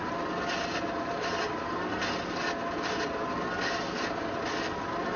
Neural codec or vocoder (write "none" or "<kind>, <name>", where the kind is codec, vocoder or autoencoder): none